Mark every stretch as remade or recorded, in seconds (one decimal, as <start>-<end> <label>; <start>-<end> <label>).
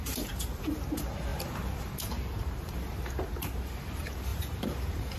0.0-5.2 remade